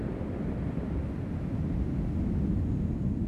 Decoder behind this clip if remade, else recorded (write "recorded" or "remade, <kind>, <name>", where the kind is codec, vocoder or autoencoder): recorded